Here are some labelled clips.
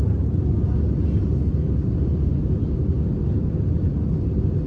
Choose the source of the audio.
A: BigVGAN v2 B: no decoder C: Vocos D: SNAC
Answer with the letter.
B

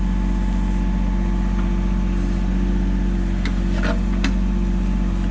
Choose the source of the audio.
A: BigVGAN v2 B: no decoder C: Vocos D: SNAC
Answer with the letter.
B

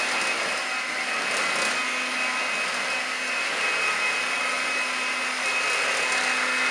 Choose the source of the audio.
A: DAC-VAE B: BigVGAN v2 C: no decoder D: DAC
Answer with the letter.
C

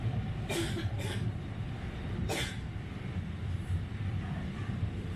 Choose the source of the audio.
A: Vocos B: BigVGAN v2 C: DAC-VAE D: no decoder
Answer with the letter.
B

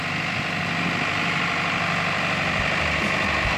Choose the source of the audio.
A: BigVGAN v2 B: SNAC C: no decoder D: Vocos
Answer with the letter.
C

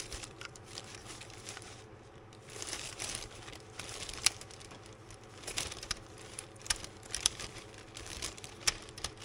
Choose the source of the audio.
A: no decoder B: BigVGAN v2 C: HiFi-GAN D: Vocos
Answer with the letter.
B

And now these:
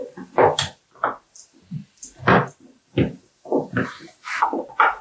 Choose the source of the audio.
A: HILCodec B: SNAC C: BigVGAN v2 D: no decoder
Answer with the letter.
D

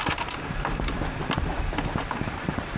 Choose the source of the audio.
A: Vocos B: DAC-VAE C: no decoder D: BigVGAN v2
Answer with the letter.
D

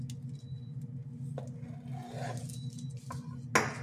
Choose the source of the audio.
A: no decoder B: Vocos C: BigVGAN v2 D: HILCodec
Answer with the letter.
A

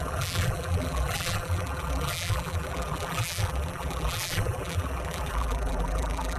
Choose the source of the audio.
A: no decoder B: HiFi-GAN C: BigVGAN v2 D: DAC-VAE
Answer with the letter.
C